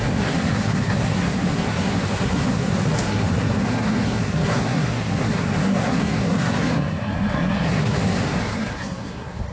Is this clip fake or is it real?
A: fake